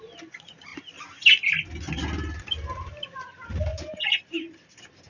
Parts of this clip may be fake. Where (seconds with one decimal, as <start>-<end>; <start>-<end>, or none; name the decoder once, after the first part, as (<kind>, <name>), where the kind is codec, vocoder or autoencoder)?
3.7-5.1 (vocoder, BigVGAN v2)